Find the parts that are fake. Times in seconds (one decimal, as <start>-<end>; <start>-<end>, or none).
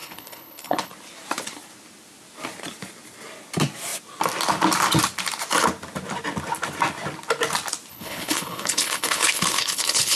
0.0-0.9; 7.9-10.2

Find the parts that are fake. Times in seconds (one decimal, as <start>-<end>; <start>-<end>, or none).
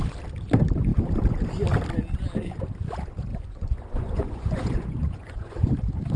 3.3-5.7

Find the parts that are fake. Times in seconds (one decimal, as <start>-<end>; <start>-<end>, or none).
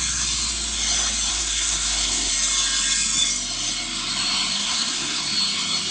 1.3-2.3; 4.5-5.2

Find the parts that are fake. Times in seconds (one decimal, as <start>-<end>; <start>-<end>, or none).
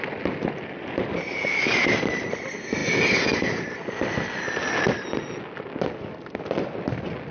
none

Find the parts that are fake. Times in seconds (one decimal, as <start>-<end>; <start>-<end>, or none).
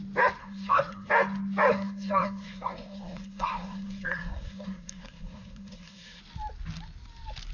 0.4-1.1; 1.7-6.2